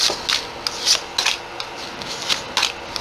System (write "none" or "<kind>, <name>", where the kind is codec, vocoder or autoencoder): none